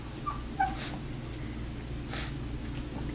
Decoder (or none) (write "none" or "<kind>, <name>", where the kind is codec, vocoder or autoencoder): none